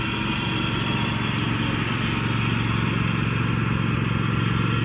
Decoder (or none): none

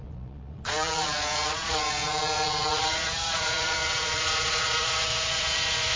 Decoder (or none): vocoder, Vocos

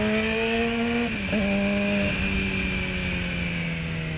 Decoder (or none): none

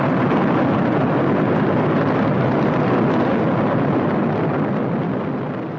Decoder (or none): none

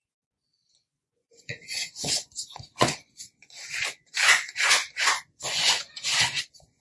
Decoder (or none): vocoder, Vocos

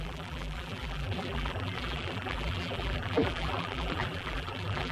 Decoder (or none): vocoder, BigVGAN v2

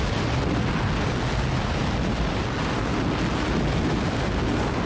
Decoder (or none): none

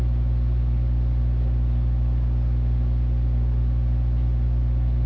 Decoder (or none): none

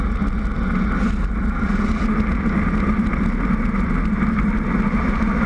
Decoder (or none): none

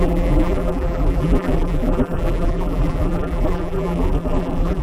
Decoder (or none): vocoder, BigVGAN v2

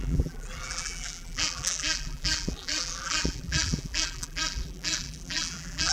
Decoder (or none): vocoder, BigVGAN v2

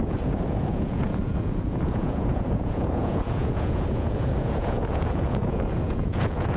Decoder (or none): vocoder, Vocos